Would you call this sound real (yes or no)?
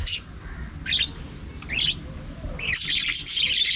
yes